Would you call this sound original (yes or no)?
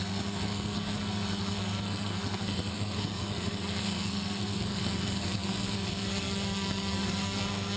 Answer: no